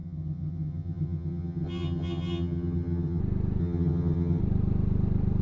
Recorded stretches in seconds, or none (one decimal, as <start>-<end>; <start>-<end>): 3.2-3.6; 4.4-5.4